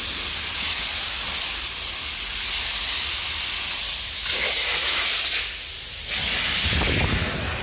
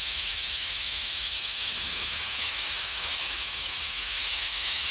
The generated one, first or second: second